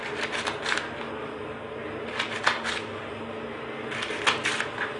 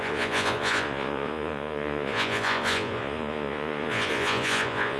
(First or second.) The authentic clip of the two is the first